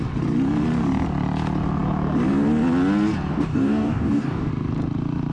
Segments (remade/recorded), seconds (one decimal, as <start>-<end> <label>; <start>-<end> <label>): 0.0-3.3 recorded; 3.3-4.5 remade; 4.5-5.3 recorded